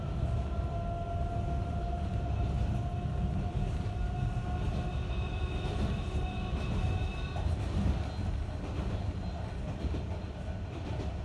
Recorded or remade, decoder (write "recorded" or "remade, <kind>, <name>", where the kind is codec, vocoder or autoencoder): recorded